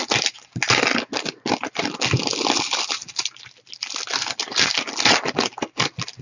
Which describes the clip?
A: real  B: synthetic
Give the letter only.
A